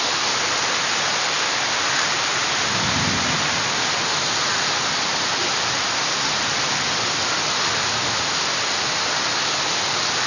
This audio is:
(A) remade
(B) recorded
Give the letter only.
B